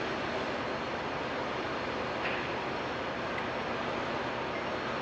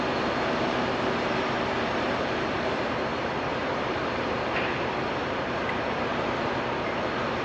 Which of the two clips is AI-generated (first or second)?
second